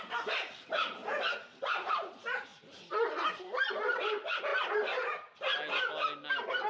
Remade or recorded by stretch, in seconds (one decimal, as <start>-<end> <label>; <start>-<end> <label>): 0.0-1.0 remade; 1.0-1.6 recorded; 1.6-2.5 remade; 2.5-3.3 recorded; 3.3-4.5 remade; 4.5-6.3 recorded; 6.3-6.7 remade